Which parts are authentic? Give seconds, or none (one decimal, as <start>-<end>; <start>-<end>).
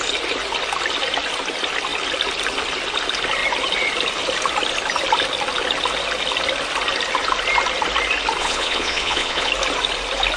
0.0-8.4; 9.5-10.4